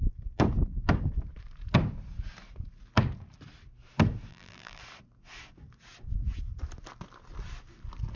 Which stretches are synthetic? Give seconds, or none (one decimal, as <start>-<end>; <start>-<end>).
4.3-4.8